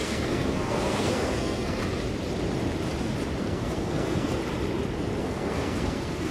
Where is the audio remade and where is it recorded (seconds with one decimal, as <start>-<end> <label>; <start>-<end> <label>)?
0.0-1.8 remade; 1.8-3.4 recorded; 3.4-4.4 remade; 4.4-5.2 recorded; 5.2-6.3 remade